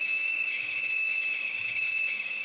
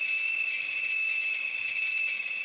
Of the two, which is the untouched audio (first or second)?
second